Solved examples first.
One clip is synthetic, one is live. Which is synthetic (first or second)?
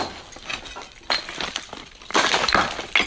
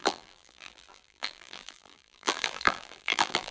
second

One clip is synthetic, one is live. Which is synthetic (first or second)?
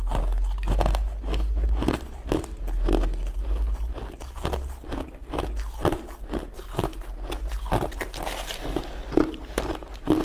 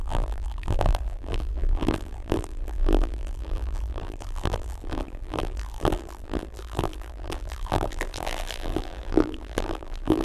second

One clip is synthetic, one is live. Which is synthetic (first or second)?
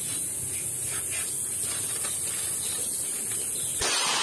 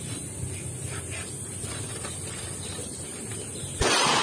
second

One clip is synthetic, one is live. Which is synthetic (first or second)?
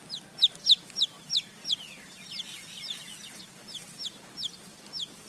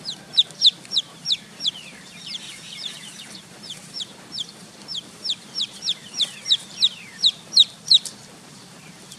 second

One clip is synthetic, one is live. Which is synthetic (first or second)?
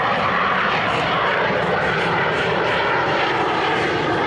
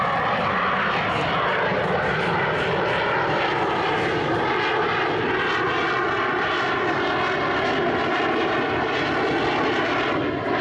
first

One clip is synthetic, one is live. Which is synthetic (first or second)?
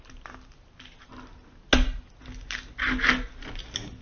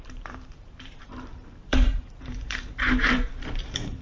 second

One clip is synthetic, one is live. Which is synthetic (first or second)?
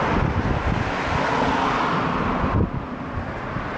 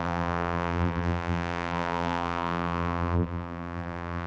second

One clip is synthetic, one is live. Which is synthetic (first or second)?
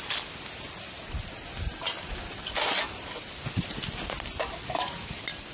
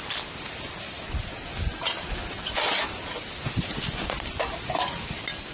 first